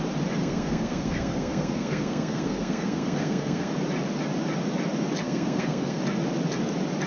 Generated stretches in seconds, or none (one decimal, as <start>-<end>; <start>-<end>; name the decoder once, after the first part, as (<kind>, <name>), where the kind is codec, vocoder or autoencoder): 0.4-3.7 (codec, SNAC); 5.2-6.0